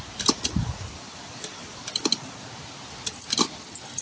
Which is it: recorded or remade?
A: recorded